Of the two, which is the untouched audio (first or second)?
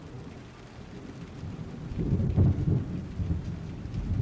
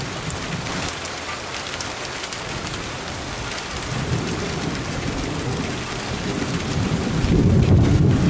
first